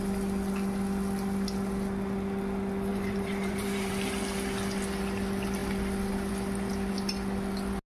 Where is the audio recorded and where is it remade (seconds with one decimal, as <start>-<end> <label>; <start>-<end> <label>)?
0.0-2.9 recorded; 2.9-3.9 remade; 3.9-8.0 recorded